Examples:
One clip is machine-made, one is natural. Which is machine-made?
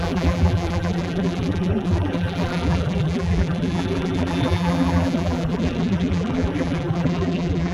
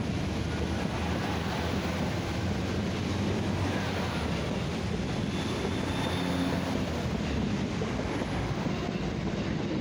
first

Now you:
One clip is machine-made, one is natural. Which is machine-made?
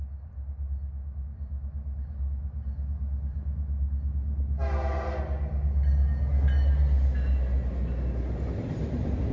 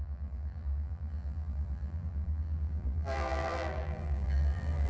second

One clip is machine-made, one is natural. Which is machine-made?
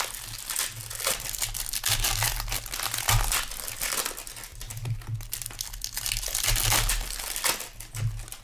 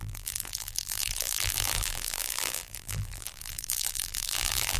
second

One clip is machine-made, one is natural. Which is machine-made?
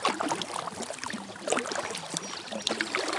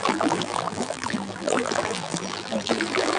second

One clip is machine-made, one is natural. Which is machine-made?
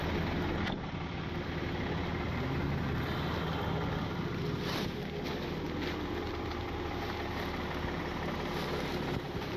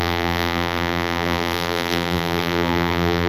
second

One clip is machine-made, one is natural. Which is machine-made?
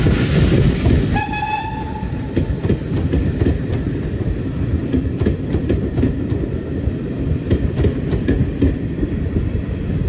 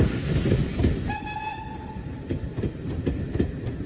first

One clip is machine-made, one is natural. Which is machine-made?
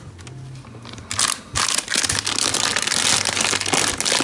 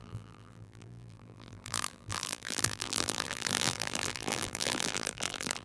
second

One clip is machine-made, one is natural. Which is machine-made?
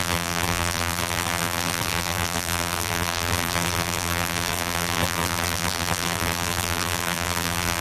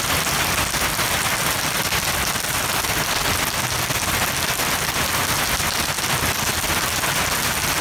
first